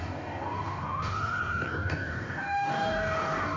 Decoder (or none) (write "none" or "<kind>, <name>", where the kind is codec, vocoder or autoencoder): codec, DAC